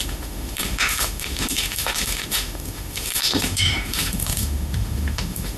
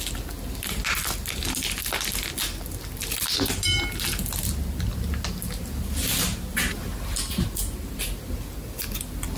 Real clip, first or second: second